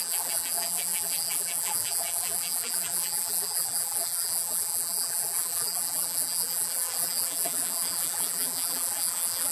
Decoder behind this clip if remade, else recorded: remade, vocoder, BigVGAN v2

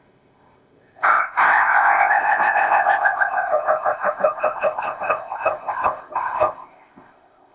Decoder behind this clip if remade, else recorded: remade, codec, ZipCodec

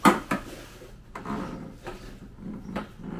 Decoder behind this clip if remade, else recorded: recorded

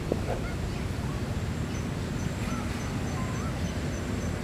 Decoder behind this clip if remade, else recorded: recorded